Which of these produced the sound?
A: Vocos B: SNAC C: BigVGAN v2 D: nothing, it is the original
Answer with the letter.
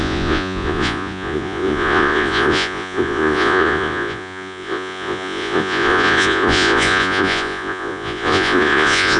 A